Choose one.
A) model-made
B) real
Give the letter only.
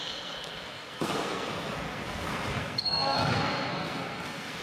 A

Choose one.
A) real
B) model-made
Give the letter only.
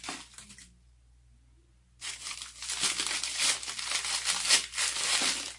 A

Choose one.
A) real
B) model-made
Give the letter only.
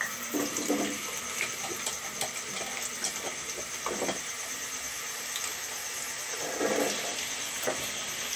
A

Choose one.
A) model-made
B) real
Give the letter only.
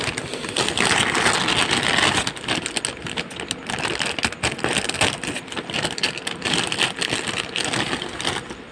B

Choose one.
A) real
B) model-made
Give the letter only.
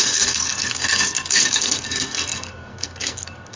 B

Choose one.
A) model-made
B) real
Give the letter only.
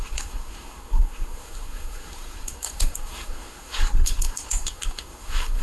A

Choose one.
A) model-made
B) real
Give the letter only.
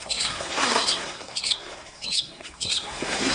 A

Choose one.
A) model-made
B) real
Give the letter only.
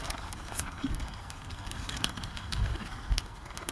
A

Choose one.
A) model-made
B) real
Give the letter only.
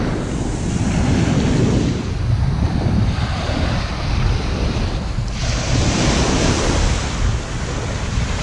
B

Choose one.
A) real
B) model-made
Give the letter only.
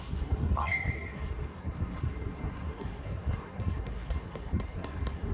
B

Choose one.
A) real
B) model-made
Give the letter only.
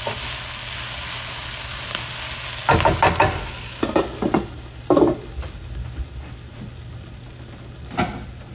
A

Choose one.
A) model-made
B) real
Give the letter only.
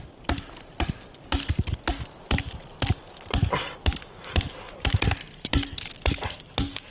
B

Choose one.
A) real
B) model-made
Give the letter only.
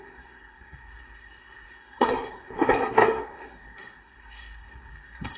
B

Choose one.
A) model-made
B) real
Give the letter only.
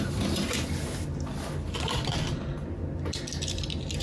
B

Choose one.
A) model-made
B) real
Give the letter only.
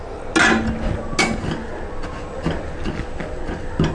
B